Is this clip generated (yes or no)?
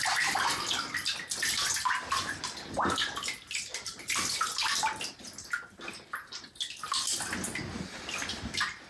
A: no